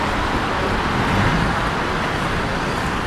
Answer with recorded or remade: recorded